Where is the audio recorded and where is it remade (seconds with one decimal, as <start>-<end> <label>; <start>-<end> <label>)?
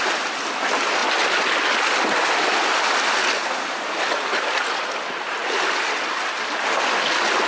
0.0-7.5 recorded